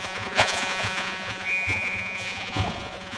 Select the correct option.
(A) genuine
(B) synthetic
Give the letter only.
B